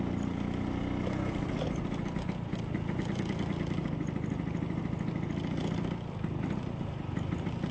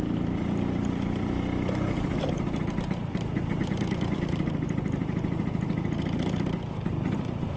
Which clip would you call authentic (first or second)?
first